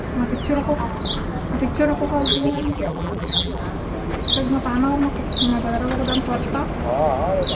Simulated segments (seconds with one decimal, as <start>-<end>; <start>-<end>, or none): 2.3-3.6